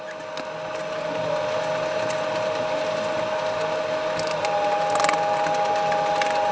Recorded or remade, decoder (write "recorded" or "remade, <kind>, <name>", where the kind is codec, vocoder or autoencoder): recorded